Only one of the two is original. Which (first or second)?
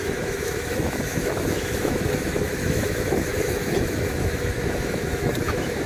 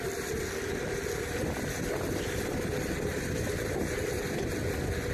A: second